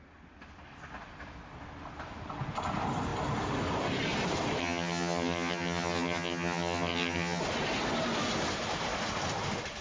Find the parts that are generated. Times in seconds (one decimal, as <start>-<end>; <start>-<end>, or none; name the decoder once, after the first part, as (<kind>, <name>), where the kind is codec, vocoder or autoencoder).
4.6-7.4 (vocoder, HiFi-GAN)